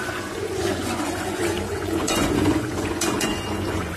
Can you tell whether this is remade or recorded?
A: remade